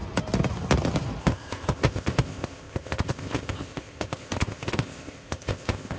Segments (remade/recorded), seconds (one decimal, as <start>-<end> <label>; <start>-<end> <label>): 0.0-1.2 recorded; 1.2-6.0 remade